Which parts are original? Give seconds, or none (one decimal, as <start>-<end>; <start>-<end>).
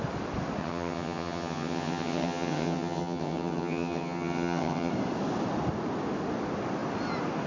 0.0-0.6; 4.9-7.5